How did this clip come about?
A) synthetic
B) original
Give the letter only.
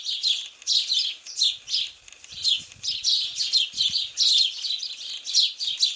B